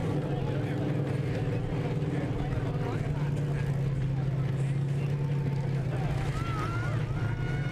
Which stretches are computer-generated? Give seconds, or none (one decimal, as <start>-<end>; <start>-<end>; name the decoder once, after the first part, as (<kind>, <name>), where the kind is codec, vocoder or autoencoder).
none